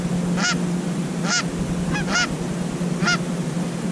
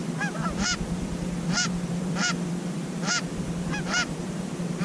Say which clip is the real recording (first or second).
first